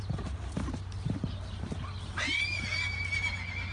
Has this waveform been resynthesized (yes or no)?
no